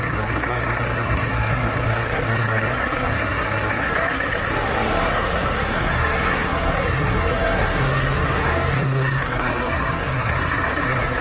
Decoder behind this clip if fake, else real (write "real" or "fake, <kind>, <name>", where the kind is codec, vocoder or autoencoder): fake, codec, SNAC